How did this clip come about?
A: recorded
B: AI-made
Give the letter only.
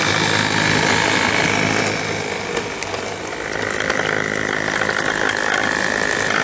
A